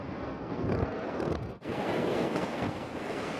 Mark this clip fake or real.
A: fake